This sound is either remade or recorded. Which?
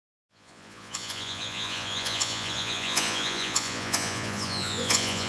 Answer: remade